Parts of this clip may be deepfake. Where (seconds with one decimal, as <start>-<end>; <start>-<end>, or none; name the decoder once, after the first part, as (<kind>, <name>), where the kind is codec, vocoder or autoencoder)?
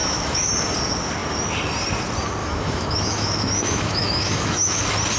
0.0-0.5 (autoencoder, DAC-VAE); 2.4-4.8